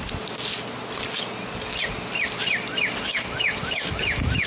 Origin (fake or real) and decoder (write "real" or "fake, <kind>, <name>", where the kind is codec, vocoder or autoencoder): real